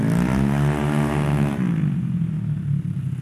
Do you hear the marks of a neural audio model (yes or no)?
no